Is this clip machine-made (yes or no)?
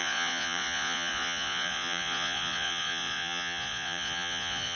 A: yes